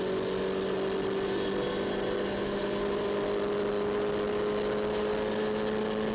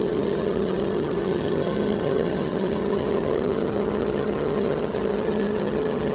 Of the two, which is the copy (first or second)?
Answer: second